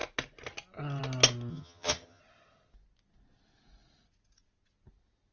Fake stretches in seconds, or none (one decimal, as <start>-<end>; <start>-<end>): 1.5-2.2